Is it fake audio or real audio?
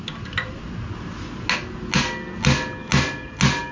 real